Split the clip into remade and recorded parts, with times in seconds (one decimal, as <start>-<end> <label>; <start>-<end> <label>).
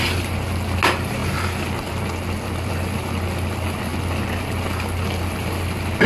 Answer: 0.0-6.1 recorded